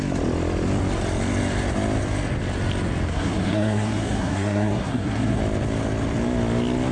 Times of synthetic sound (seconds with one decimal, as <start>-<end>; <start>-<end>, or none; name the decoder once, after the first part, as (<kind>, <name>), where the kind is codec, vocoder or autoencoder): 3.1-5.4 (codec, SNAC)